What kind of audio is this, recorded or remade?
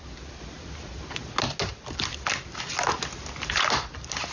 recorded